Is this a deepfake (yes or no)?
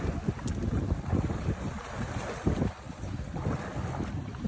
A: no